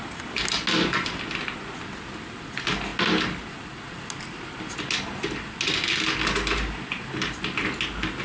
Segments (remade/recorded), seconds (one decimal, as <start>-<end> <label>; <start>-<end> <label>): 0.0-8.2 recorded